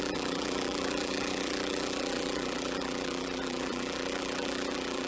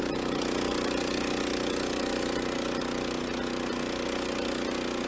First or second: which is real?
second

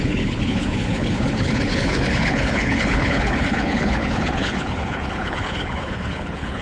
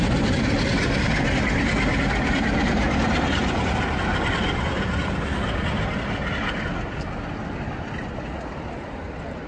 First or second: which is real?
second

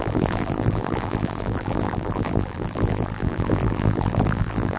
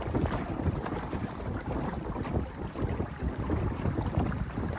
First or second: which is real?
second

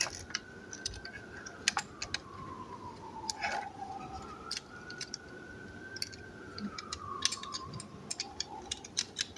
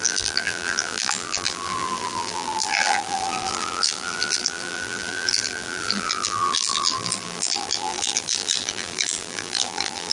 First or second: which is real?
first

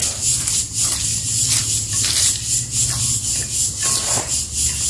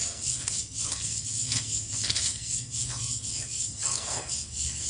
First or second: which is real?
first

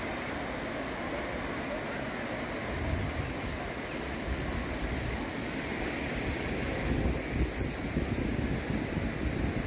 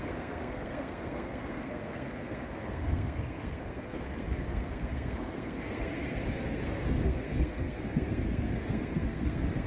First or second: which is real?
first